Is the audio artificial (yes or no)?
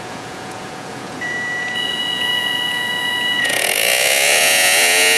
yes